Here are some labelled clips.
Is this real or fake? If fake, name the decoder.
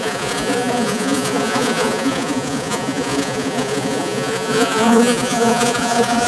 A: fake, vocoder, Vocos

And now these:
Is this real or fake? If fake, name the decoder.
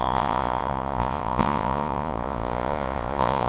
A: fake, vocoder, Vocos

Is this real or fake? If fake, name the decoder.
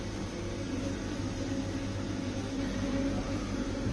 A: real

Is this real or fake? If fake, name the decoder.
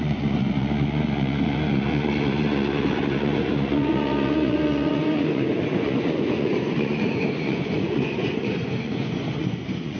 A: fake, vocoder, Vocos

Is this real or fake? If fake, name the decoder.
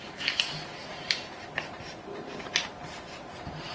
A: real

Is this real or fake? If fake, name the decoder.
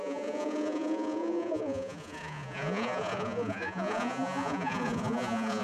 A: fake, vocoder, Vocos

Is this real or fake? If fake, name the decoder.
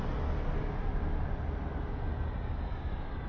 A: real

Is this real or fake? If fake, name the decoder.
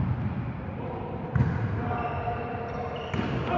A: real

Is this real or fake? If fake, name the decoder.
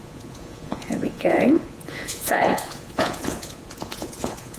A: fake, vocoder, Vocos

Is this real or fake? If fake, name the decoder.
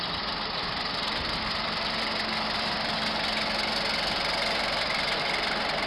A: real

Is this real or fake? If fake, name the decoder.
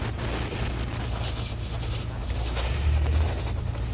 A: real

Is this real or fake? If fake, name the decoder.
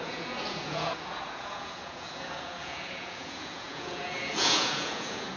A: fake, vocoder, Vocos